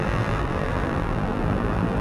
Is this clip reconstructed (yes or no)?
yes